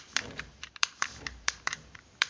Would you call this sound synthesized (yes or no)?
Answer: yes